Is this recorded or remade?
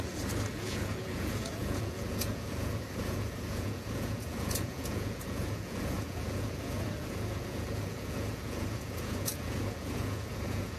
remade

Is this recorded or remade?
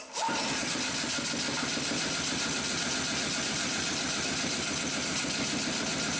recorded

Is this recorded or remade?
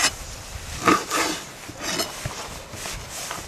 recorded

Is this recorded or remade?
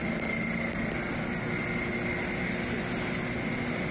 recorded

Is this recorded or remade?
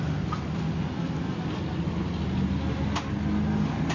recorded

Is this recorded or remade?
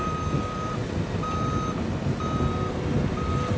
recorded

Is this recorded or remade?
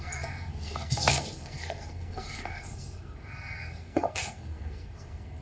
remade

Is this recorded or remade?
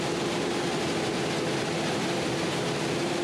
recorded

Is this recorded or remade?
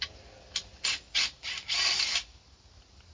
recorded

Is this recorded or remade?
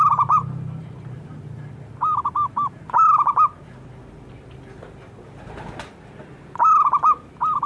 recorded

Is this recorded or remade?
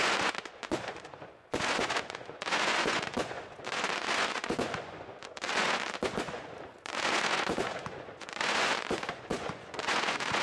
remade